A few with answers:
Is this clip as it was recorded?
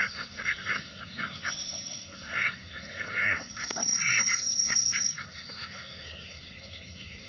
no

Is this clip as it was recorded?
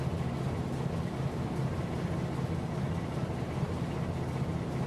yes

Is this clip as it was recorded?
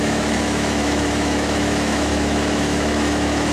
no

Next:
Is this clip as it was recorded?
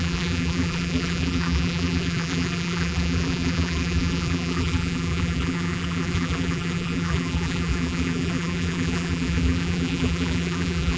no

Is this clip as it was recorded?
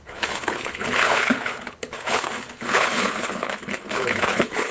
no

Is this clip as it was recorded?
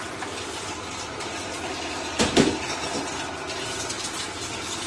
yes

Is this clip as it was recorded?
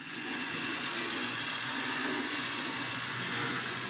no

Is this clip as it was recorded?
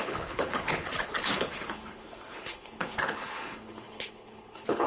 no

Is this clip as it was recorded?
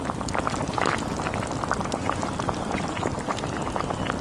yes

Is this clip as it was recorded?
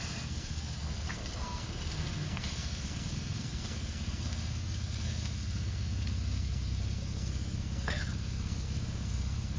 no